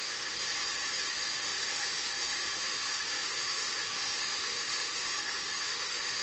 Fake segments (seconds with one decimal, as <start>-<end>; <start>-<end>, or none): 0.0-0.4; 1.1-6.2